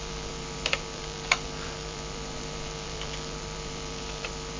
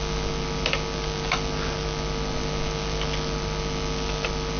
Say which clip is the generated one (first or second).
first